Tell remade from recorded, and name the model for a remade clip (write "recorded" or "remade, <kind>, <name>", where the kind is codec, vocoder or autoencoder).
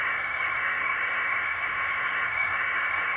remade, codec, SNAC